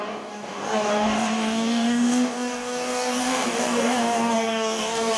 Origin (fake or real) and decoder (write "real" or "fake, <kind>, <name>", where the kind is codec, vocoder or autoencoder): fake, codec, DAC